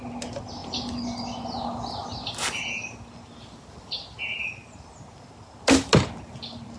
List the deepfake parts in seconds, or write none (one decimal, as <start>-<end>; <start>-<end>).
none